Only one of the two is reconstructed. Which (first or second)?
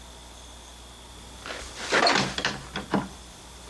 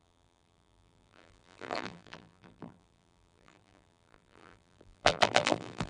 second